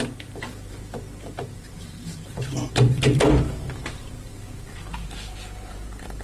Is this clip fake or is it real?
fake